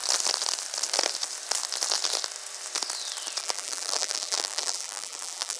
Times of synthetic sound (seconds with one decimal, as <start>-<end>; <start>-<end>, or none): 3.4-5.6